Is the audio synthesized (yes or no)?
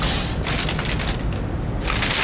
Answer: no